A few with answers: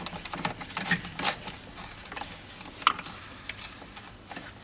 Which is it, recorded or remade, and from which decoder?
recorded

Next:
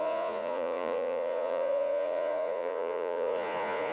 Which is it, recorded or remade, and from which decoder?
remade, vocoder, Vocos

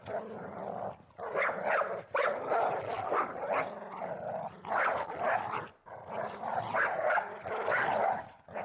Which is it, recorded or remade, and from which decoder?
recorded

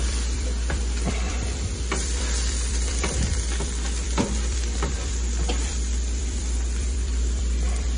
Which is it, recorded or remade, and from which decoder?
remade, vocoder, BigVGAN v2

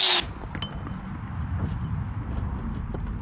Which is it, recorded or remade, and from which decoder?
recorded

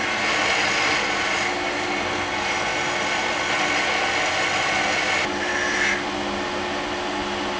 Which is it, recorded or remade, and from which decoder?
recorded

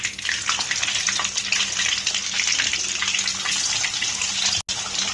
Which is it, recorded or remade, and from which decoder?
recorded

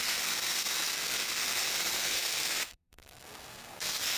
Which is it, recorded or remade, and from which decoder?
remade, codec, SNAC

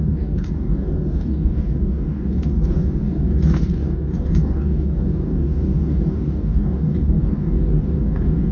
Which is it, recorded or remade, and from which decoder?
remade, codec, DAC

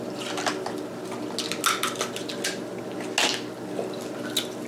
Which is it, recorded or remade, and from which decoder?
recorded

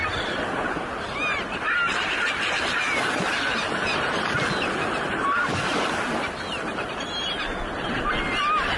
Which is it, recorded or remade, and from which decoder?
recorded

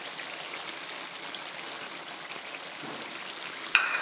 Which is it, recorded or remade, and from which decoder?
recorded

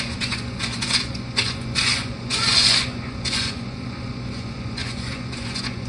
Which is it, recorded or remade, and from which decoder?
remade, vocoder, Vocos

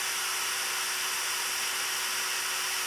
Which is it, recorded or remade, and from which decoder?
recorded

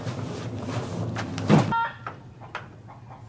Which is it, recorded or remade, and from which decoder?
recorded